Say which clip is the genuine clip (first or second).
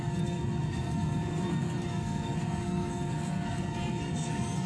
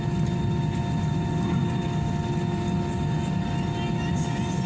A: second